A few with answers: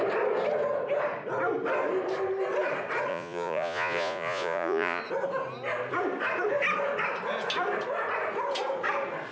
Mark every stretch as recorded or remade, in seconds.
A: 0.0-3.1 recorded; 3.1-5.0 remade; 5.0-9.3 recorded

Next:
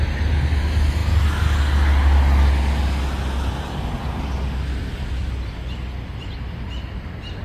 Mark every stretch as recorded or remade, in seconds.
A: 0.0-7.4 recorded

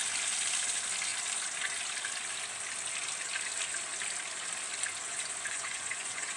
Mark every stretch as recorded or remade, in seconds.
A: 0.0-5.1 recorded; 5.1-6.4 remade

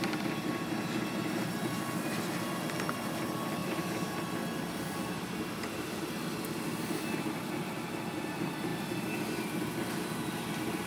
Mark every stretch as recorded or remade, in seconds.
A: 0.0-3.6 recorded; 3.6-4.2 remade; 4.2-10.9 recorded

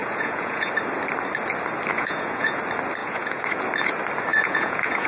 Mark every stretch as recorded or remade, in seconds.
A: 0.0-0.7 remade; 0.7-1.9 recorded; 1.9-2.6 remade; 2.6-3.0 recorded; 3.0-3.6 remade; 3.6-4.3 recorded; 4.3-5.1 remade

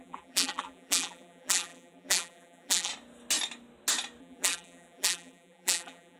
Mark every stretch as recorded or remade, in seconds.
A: 0.0-2.9 remade; 2.9-4.2 recorded; 4.2-6.2 remade